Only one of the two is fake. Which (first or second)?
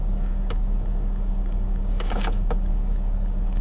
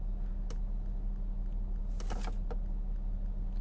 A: first